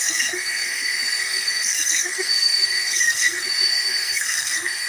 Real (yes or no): no